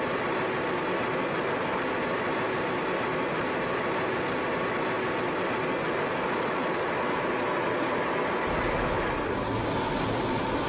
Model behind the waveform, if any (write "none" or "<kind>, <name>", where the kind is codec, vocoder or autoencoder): none